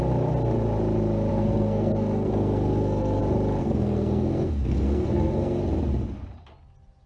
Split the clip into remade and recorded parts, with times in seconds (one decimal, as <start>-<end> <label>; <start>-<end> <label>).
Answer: 0.0-1.3 recorded; 1.3-3.2 remade; 3.2-3.6 recorded; 3.6-5.6 remade; 5.6-7.1 recorded